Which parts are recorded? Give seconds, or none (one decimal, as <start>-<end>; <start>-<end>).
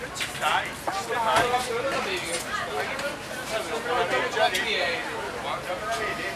0.0-6.4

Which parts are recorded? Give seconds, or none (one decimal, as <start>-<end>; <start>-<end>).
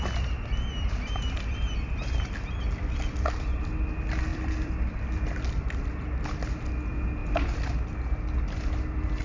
0.0-4.3; 4.9-9.2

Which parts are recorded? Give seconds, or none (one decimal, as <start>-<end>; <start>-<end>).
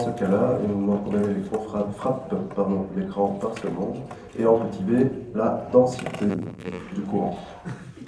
0.0-6.3; 6.8-8.1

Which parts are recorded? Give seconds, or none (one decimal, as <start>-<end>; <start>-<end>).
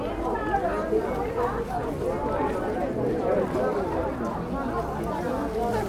0.0-5.9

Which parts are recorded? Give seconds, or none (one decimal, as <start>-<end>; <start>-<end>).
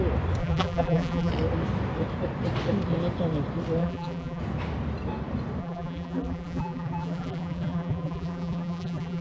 0.0-0.4; 1.3-3.8; 4.4-5.6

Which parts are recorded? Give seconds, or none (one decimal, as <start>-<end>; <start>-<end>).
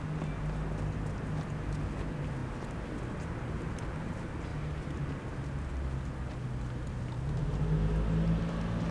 0.0-8.9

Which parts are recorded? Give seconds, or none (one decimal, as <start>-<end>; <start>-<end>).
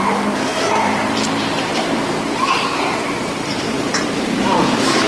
none